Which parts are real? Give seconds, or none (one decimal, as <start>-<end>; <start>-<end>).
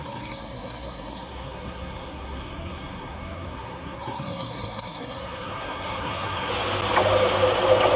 6.5-8.0